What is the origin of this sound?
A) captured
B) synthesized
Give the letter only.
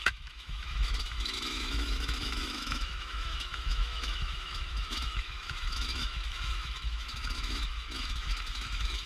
B